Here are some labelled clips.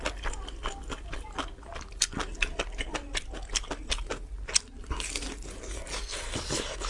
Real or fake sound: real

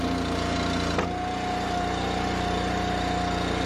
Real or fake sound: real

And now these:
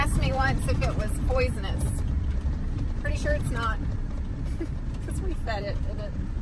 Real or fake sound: fake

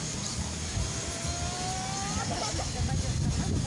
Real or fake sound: real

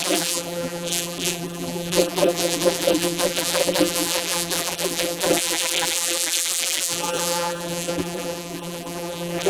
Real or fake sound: fake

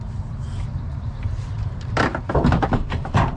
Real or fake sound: fake